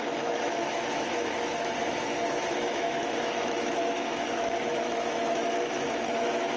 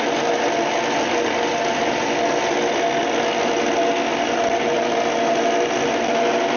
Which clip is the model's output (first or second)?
first